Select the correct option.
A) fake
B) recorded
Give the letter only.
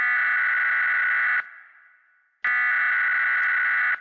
B